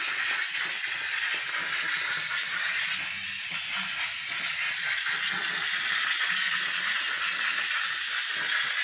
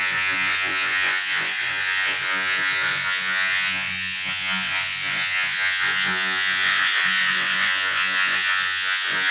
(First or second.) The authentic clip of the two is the first